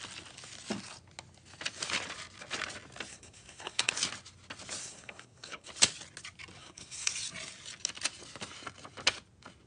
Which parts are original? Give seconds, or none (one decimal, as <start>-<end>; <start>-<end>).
0.0-3.1; 3.9-4.8; 5.7-6.6; 7.1-9.7